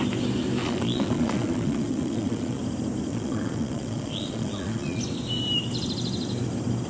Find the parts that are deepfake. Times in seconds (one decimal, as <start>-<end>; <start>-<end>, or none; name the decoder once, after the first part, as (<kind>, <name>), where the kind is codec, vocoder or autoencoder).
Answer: 0.6-2.6 (vocoder, Vocos); 3.1-5.0